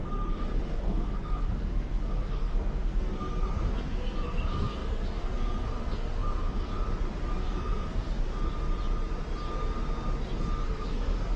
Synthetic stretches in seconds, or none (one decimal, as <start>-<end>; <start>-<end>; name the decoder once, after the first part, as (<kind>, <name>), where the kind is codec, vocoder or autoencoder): 0.0-6.7 (codec, SNAC); 7.4-8.3; 10.6-11.4